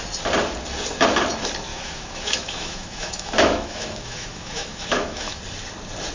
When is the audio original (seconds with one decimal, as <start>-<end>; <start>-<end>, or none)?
0.0-1.7; 5.4-6.1